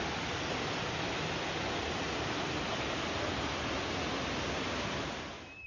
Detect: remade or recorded recorded